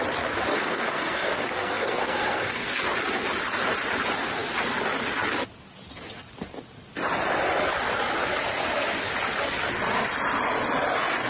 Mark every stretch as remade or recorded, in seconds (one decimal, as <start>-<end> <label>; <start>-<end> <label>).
0.0-0.5 recorded; 0.5-2.8 remade; 2.8-11.3 recorded